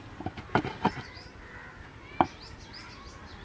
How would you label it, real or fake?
real